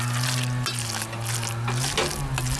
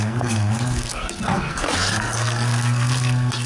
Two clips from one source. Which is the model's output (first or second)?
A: second